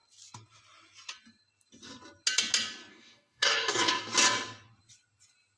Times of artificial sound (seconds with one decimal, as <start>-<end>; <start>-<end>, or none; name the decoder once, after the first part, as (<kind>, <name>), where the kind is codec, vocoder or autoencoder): 2.9-3.9 (codec, DAC)

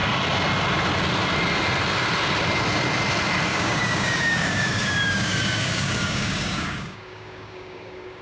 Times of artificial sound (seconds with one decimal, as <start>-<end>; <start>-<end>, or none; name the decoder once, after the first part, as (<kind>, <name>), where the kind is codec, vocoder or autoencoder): 3.5-8.2 (codec, DAC)

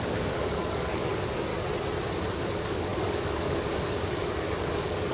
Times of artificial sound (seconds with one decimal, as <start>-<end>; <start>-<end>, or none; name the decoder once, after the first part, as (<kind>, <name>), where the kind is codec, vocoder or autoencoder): 0.0-1.5 (codec, DAC); 2.4-5.1

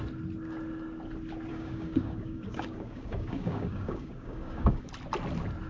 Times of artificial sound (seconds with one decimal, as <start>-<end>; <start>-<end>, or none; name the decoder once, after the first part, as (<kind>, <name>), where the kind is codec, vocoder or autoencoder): 1.5-4.9 (codec, DAC)

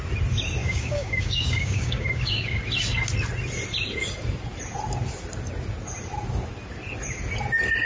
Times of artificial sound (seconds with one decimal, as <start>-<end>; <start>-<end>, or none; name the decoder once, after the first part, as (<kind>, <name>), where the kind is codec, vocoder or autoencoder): 0.6-2.6 (codec, DAC)